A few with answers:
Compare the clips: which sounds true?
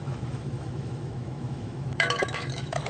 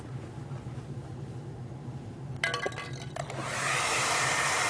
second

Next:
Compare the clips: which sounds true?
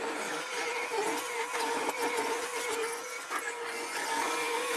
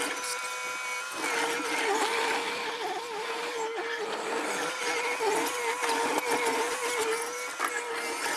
second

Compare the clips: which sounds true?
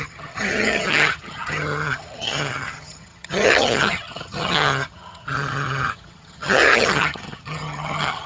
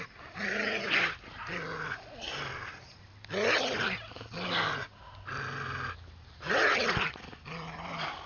second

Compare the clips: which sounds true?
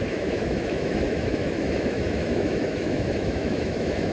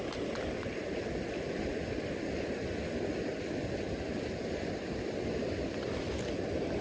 second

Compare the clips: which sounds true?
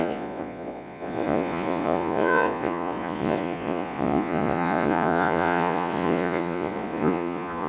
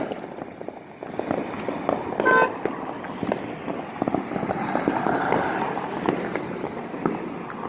second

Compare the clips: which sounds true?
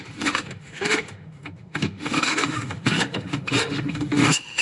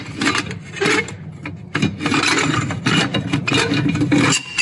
second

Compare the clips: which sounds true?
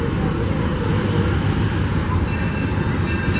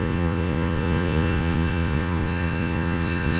first